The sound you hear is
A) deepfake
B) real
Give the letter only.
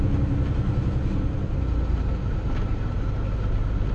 B